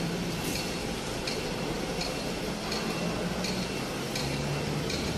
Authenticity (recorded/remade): recorded